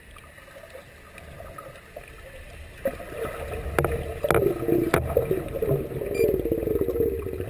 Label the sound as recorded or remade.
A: recorded